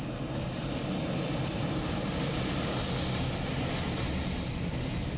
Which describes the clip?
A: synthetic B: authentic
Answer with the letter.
B